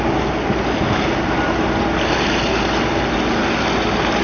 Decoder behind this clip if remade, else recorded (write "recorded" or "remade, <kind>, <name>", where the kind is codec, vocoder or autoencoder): recorded